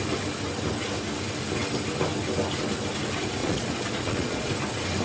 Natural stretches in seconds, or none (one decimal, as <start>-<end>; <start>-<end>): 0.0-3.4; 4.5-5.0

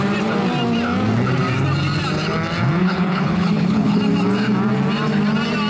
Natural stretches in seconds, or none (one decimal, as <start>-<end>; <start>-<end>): 0.0-2.8; 4.0-5.7

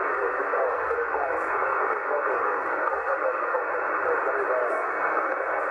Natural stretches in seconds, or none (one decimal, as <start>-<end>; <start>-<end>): 3.6-4.7